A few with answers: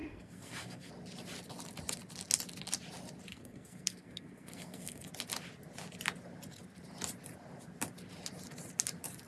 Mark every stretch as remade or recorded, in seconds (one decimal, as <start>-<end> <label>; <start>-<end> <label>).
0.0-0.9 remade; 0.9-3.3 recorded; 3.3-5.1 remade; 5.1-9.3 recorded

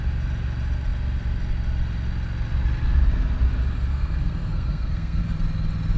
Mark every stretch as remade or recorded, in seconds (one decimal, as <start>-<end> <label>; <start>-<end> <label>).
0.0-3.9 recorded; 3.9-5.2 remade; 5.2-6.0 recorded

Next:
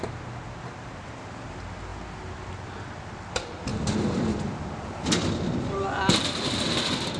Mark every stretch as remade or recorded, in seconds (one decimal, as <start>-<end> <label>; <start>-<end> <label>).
0.0-7.2 recorded